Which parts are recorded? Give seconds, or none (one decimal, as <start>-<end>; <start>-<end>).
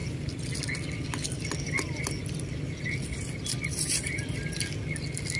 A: 0.0-5.4